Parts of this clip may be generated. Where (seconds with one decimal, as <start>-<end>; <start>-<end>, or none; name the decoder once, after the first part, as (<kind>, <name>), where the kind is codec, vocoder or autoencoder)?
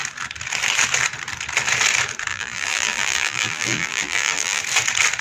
2.3-4.6 (vocoder, BigVGAN v2)